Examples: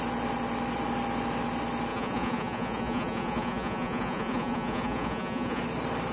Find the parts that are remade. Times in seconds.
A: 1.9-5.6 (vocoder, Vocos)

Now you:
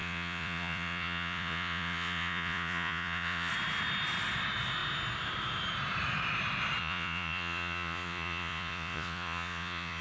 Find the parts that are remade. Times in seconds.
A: 0.0-3.5 (vocoder, Vocos); 6.8-10.0

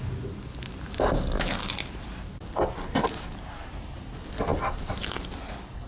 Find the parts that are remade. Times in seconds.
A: none